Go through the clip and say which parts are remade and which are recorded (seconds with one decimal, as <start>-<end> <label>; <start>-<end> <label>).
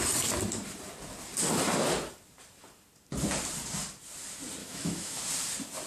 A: 0.0-4.6 recorded; 4.6-5.2 remade; 5.2-5.9 recorded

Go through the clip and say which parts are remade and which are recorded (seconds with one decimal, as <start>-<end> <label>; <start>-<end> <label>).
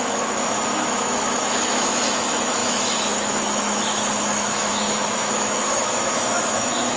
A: 0.0-7.0 remade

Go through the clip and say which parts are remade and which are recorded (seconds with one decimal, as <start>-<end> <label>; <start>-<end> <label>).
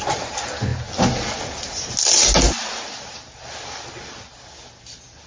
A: 0.0-5.3 recorded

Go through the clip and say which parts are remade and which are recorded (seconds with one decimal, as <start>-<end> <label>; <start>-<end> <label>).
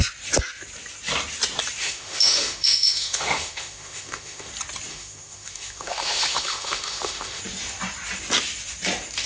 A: 0.0-1.8 recorded; 1.8-4.5 remade; 4.5-4.9 recorded; 4.9-7.4 remade; 7.4-9.3 recorded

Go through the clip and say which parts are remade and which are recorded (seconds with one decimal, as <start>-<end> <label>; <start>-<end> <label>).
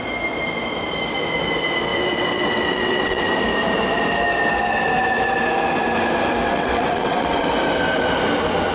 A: 0.0-1.9 recorded; 1.9-3.3 remade; 3.3-6.5 recorded; 6.5-7.5 remade; 7.5-8.7 recorded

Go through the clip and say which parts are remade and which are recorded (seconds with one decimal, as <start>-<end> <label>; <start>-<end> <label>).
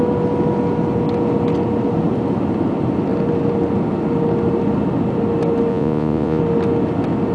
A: 0.0-5.7 recorded; 5.7-6.4 remade; 6.4-7.3 recorded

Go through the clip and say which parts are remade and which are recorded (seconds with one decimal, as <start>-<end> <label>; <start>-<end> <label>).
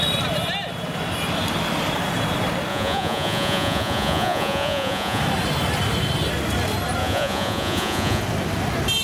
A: 0.0-2.7 recorded; 2.7-5.2 remade; 5.2-7.0 recorded; 7.0-8.2 remade; 8.2-9.0 recorded